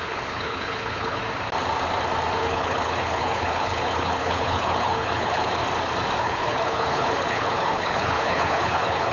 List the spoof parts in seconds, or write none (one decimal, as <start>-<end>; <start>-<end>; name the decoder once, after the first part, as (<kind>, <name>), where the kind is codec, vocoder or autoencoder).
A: 0.0-1.2 (codec, HILCodec); 2.4-5.6; 6.2-9.1